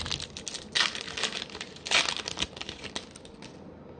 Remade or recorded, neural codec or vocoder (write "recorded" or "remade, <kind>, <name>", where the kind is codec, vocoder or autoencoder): recorded